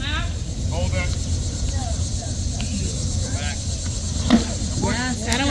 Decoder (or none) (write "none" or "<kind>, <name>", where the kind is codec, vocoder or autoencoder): none